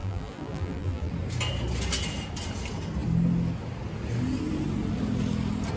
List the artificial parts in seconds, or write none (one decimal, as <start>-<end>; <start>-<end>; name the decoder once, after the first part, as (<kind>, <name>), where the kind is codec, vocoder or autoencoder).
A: 0.0-1.1 (vocoder, BigVGAN v2)